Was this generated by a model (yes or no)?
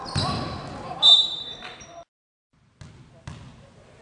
no